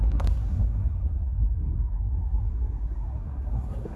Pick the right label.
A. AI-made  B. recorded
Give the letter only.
A